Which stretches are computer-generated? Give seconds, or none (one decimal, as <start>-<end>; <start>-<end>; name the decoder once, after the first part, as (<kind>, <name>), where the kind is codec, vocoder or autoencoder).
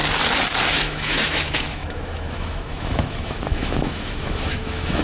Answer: 0.7-5.0 (autoencoder, DAC-VAE)